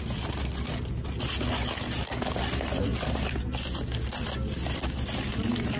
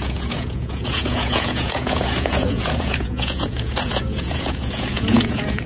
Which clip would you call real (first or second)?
first